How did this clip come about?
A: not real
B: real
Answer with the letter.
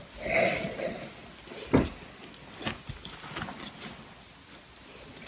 B